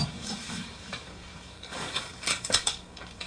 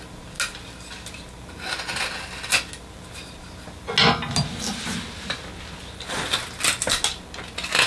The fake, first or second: first